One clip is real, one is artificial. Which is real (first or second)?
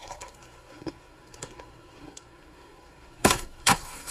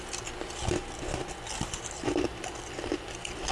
second